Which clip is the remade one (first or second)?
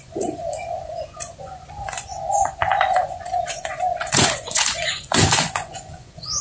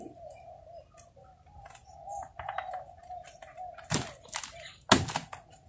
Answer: first